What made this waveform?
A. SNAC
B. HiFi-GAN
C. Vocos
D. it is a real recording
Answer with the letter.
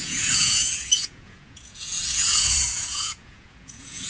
C